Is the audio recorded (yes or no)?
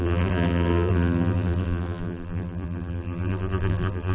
no